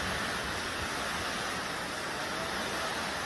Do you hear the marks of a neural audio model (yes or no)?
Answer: no